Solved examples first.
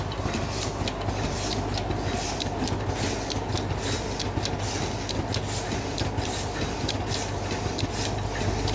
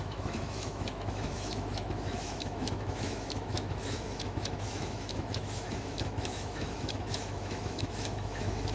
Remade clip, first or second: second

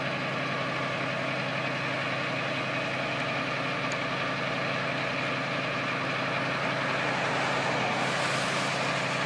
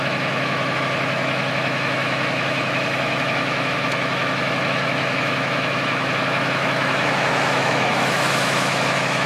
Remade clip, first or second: second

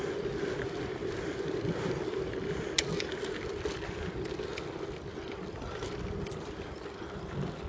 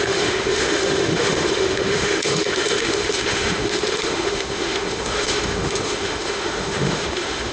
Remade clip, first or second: second